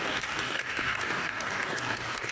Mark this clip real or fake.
fake